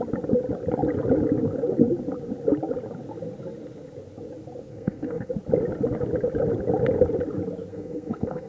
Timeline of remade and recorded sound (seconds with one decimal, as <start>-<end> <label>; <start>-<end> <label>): 0.0-4.7 recorded; 4.7-5.3 remade; 5.3-7.7 recorded; 7.7-8.5 remade